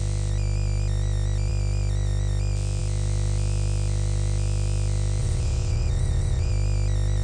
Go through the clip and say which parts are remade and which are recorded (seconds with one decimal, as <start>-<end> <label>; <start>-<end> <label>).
0.0-5.2 recorded; 5.2-6.5 remade; 6.5-7.2 recorded